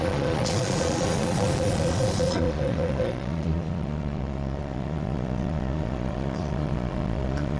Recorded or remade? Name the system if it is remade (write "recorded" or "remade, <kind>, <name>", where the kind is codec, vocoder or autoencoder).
remade, vocoder, Vocos